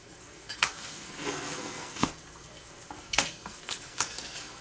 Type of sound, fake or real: fake